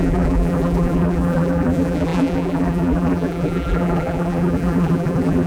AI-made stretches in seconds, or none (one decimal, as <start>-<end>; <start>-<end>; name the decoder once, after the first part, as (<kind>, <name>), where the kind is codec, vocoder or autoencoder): 0.0-5.5 (vocoder, BigVGAN v2)